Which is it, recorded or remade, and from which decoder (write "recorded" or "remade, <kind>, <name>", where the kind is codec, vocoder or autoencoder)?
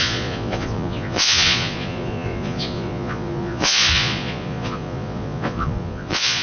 remade, vocoder, Vocos